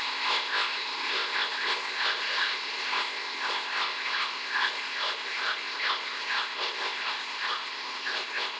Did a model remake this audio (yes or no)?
yes